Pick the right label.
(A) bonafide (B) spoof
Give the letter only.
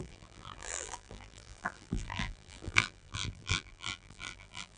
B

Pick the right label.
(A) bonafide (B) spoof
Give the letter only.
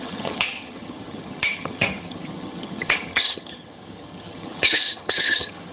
B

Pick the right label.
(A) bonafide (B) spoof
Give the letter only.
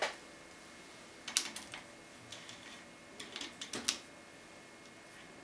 A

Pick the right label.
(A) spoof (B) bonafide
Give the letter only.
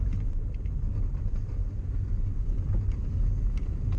B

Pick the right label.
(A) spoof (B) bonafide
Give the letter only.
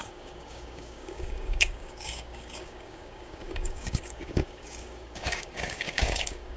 A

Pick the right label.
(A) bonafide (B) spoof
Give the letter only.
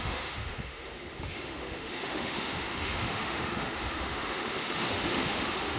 B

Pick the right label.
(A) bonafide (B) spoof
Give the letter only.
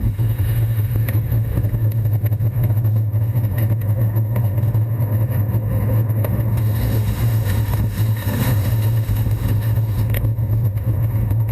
B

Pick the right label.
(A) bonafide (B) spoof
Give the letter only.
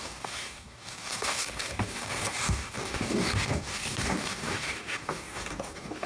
B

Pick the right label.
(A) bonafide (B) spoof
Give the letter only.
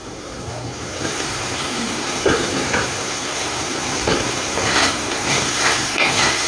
B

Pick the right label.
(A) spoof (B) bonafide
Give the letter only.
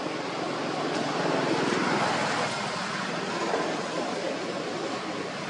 B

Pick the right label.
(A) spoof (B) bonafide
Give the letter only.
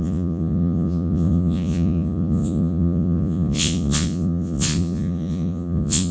A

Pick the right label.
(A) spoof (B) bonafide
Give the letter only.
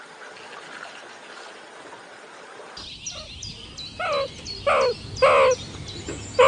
B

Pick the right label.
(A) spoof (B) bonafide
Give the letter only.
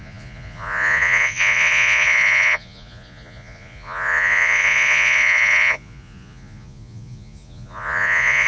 A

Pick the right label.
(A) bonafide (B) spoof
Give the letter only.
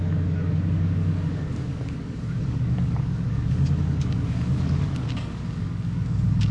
B